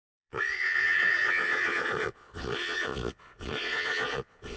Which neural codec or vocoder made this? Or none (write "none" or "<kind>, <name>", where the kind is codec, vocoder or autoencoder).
vocoder, Vocos